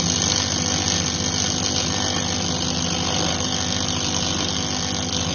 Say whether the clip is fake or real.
real